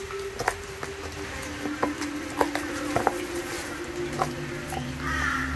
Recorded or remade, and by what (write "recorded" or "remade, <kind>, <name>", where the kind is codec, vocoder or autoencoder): recorded